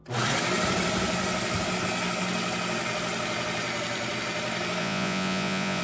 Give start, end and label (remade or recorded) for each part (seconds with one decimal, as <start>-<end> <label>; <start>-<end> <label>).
0.0-4.8 recorded; 4.8-5.8 remade